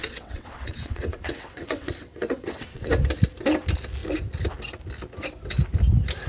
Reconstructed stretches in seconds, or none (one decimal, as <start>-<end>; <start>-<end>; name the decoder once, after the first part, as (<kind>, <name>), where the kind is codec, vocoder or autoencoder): 0.0-2.9 (vocoder, WaveNeXt)